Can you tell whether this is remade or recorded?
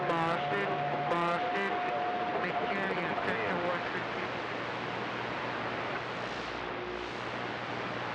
recorded